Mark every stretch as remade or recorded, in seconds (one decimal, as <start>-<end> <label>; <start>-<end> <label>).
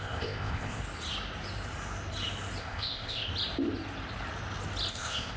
0.0-0.8 remade; 0.8-2.6 recorded; 2.6-3.3 remade; 3.3-4.9 recorded; 4.9-5.4 remade